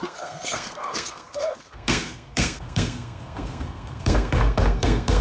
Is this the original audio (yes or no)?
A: no